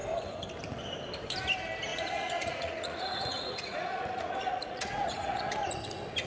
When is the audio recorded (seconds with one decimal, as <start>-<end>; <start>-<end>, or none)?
0.0-1.9; 5.7-6.3